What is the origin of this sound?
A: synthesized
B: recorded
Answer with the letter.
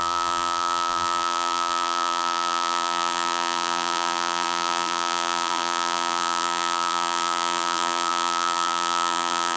A